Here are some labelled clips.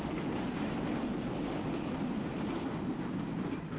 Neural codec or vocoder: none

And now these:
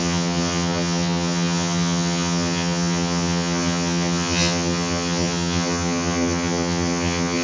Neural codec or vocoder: vocoder, HiFi-GAN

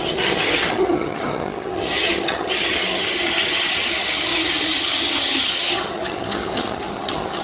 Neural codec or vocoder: vocoder, HiFi-GAN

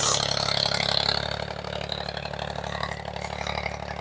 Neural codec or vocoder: none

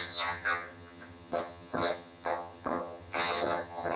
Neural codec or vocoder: vocoder, HiFi-GAN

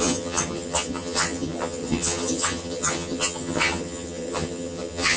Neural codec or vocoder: vocoder, HiFi-GAN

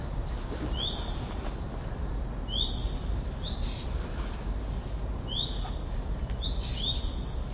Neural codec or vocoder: none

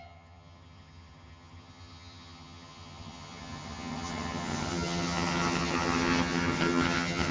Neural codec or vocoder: vocoder, HiFi-GAN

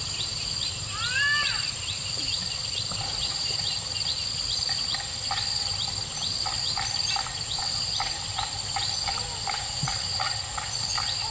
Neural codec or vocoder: none